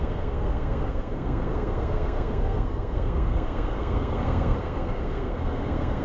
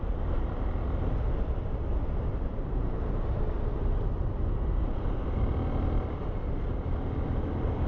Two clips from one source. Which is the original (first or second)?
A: second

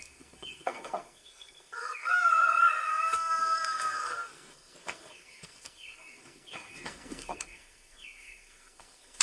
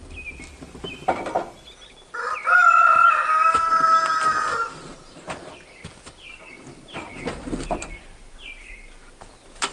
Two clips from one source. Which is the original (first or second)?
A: second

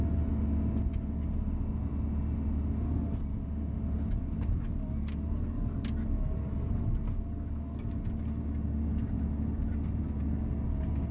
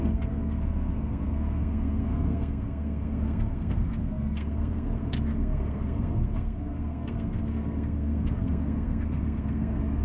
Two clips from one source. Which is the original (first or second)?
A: first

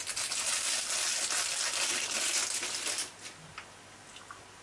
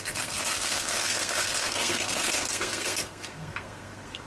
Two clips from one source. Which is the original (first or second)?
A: first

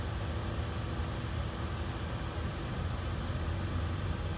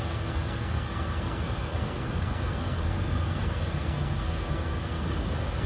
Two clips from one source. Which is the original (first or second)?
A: first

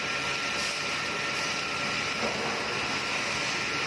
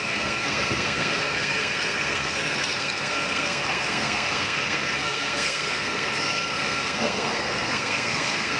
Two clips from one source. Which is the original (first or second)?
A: first